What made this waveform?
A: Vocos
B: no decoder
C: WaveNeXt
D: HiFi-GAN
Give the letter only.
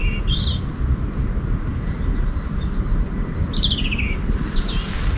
B